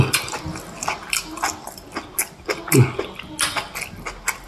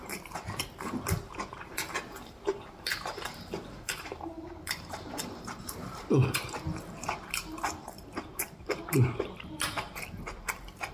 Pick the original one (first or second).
first